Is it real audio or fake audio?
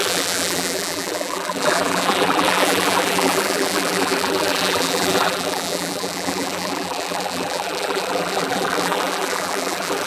fake